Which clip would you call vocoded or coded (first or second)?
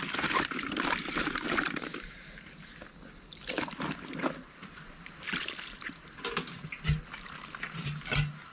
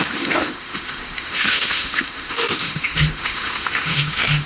second